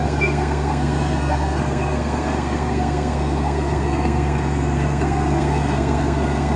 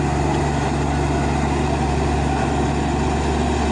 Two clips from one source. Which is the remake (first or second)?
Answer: first